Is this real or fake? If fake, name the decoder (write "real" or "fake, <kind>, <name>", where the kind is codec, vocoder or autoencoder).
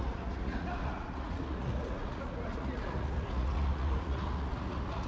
fake, vocoder, Vocos